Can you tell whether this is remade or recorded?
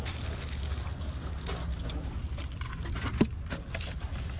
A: recorded